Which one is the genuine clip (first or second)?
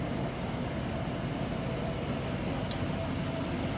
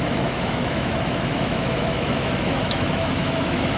first